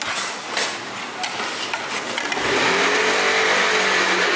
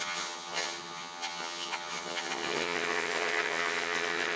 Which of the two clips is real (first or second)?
first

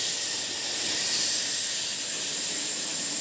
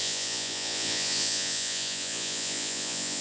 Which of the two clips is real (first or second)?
first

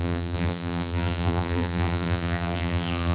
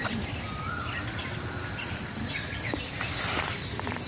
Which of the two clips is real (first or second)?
second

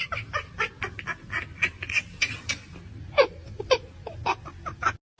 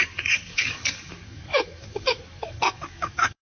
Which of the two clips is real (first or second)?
first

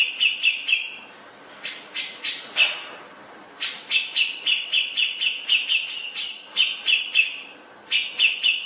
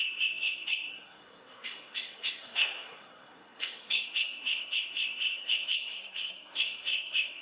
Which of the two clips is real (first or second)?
first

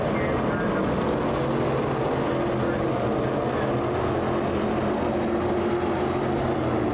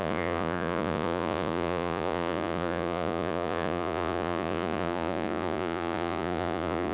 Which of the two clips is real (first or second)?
first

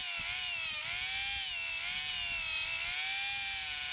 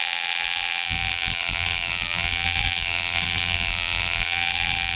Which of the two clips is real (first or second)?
first